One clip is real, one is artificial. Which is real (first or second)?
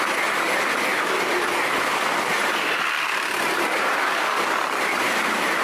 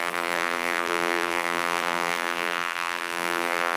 first